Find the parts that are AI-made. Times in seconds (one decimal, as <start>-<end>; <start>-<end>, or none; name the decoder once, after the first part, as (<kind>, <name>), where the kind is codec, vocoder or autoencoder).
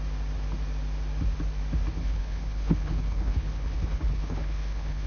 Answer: 2.0-5.1 (codec, HILCodec)